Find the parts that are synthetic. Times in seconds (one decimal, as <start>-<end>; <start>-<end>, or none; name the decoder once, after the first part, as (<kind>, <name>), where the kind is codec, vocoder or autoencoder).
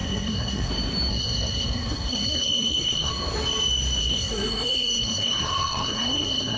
0.0-0.7 (codec, SNAC); 1.1-3.1; 4.0-6.6